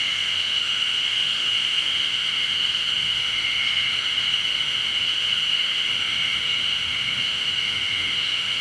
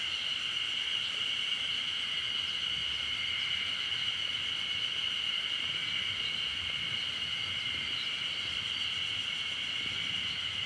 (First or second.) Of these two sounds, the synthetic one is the first